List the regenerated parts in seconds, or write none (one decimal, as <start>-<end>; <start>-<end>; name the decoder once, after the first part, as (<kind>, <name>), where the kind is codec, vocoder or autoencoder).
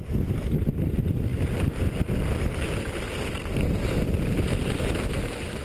none